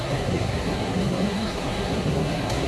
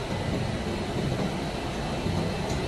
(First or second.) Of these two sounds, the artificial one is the first